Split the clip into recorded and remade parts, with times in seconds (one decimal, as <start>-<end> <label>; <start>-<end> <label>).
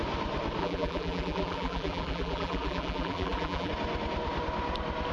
0.0-0.6 recorded; 0.6-3.7 remade; 3.7-5.1 recorded